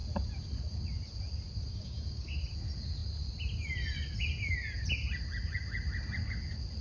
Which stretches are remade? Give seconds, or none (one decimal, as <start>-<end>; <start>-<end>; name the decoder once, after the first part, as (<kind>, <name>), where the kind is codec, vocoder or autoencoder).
1.7-2.4 (codec, DAC)

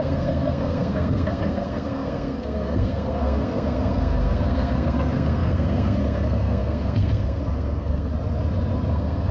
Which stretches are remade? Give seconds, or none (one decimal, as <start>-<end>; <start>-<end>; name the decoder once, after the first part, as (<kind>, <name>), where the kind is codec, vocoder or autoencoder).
0.0-8.1 (codec, SNAC); 8.9-9.3

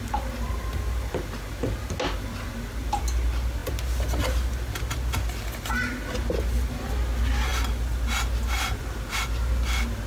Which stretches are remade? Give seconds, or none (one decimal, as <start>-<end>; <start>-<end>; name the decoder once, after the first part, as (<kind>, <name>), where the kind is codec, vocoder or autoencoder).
none

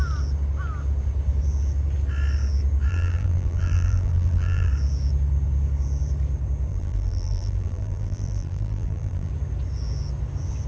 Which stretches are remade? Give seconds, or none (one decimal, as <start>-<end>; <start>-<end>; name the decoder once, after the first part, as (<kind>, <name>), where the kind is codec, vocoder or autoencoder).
2.9-4.7 (vocoder, BigVGAN v2); 6.7-9.3

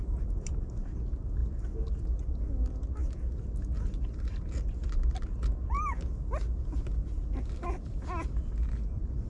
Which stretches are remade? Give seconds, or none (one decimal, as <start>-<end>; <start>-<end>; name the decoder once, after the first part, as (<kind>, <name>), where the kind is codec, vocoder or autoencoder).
none